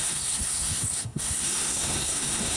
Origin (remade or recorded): remade